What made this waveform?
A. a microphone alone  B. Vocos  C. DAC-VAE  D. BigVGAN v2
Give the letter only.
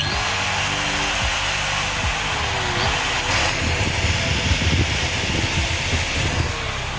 A